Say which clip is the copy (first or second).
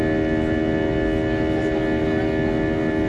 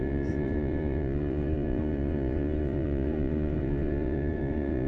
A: second